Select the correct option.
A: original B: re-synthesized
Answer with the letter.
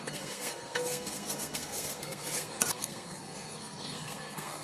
B